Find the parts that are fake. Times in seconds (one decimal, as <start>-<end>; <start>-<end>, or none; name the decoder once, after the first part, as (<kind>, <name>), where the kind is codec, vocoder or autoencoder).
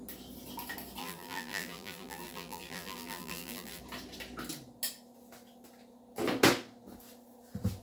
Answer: 1.0-3.8 (vocoder, BigVGAN v2)